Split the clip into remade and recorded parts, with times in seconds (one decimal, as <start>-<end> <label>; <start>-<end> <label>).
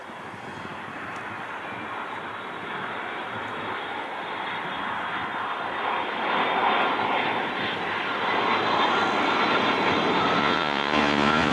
0.0-10.4 recorded; 10.4-11.5 remade